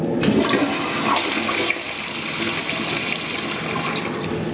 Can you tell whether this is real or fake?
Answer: real